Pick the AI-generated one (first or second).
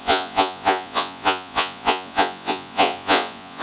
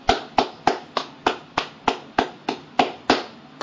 first